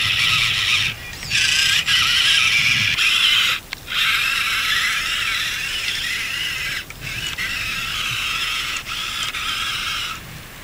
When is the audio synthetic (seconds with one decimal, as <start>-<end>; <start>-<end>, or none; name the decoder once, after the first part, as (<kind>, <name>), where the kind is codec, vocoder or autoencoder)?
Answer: 8.2-8.8 (vocoder, Vocos)